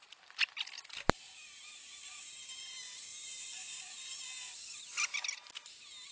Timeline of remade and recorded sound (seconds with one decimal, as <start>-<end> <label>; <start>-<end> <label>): 0.0-3.1 recorded; 3.1-3.7 remade; 3.7-6.1 recorded